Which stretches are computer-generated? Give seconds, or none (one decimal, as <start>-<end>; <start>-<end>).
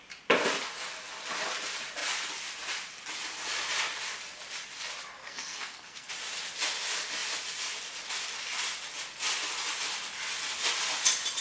5.2-6.1